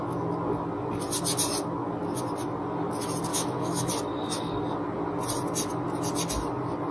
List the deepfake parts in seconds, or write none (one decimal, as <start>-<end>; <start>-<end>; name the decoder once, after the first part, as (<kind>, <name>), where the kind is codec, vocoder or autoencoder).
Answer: 3.3-3.9 (autoencoder, DAC-VAE)